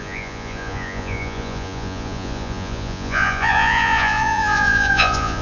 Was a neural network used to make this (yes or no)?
yes